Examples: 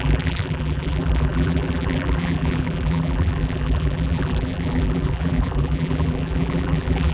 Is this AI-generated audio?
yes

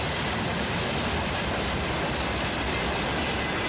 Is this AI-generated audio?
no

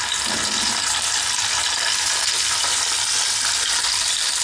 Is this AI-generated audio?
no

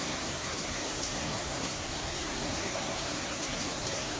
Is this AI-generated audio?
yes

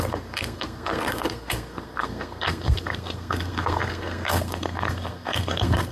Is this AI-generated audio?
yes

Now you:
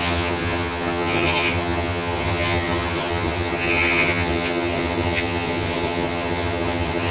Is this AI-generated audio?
yes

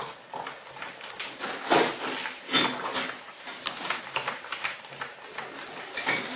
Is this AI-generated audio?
no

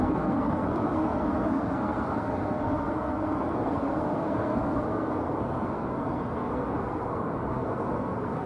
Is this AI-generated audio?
yes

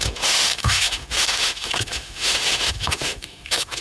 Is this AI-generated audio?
yes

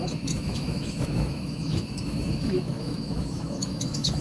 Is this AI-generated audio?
yes